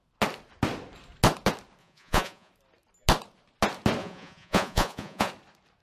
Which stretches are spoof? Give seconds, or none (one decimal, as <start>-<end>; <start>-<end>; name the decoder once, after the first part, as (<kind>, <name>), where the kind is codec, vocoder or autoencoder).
1.8-2.5 (vocoder, Vocos); 4.0-5.3